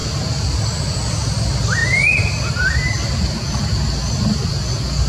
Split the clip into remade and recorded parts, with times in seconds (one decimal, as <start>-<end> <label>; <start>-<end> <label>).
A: 0.0-5.1 recorded